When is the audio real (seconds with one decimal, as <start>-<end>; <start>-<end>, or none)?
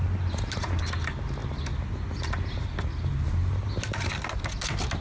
0.0-5.0